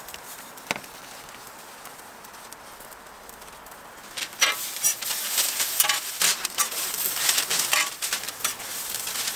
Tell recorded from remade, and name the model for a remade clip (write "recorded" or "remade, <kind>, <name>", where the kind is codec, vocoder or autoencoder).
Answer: recorded